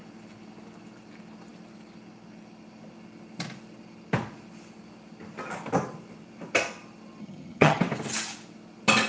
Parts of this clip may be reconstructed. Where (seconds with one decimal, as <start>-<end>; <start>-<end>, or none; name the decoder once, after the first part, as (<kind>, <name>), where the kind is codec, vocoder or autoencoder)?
7.2-7.8 (vocoder, HiFi-GAN)